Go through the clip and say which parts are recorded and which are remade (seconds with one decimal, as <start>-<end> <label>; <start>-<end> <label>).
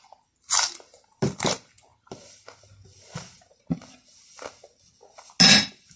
0.0-6.0 recorded